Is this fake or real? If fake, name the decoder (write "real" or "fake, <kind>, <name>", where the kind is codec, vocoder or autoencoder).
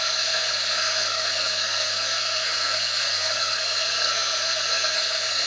fake, codec, SNAC